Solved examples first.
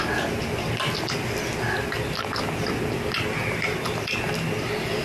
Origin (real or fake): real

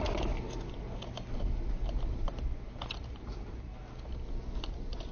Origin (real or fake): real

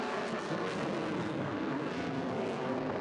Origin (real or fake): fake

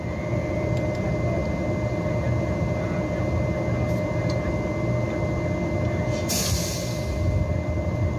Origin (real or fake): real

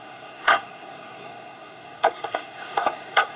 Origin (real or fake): fake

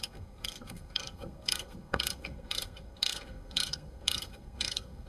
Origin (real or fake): fake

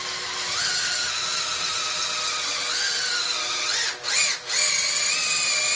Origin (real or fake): real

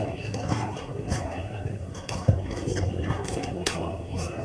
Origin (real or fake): fake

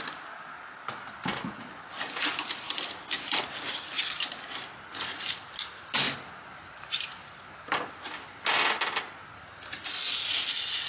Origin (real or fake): real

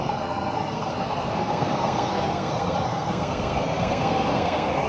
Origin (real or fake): fake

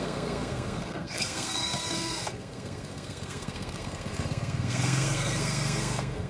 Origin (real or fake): fake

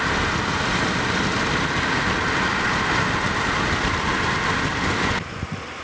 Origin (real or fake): real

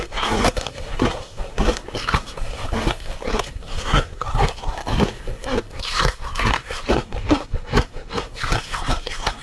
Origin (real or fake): fake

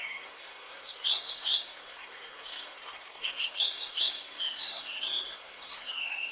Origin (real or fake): fake